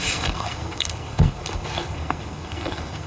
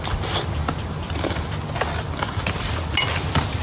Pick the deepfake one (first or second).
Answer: first